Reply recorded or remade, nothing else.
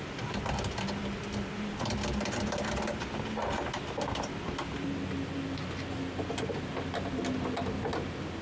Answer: recorded